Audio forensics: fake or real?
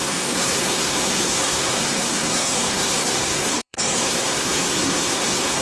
fake